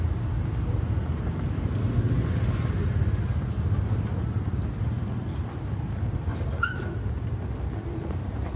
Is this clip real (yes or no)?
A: yes